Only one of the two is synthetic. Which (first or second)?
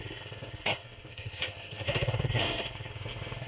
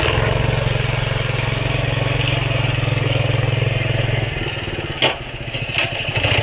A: first